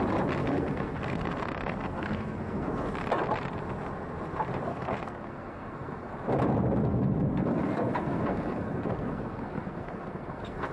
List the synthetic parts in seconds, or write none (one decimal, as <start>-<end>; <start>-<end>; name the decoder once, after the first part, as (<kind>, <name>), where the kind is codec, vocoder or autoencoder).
0.4-2.9 (codec, SNAC); 4.7-6.1; 6.8-10.7

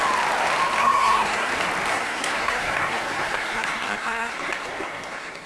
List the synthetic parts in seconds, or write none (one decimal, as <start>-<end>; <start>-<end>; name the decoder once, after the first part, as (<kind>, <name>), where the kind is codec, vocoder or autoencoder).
0.8-1.5 (codec, SNAC); 1.9-5.5

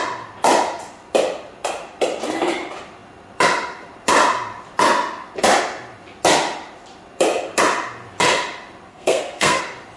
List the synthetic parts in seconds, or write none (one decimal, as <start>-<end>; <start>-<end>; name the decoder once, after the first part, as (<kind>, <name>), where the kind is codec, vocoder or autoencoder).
8.9-9.6 (codec, SNAC)

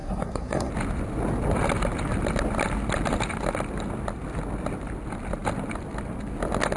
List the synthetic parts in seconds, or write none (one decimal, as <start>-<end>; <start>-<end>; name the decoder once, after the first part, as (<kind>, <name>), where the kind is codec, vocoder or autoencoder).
0.0-0.7 (codec, SNAC)